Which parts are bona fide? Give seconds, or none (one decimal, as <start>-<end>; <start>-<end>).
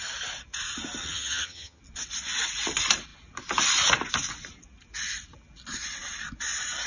0.0-1.0; 1.8-6.9